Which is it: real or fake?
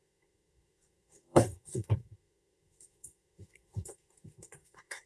fake